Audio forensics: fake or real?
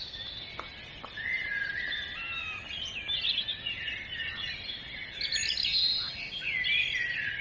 real